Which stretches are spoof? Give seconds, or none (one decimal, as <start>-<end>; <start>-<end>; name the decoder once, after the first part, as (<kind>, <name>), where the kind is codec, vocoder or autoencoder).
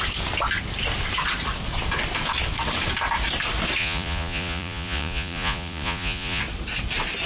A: 3.8-6.4 (vocoder, Vocos)